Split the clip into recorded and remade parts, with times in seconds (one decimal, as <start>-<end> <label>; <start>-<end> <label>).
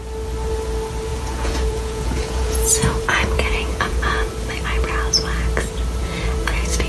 0.0-1.1 recorded; 1.1-4.3 remade; 4.3-6.0 recorded; 6.0-6.9 remade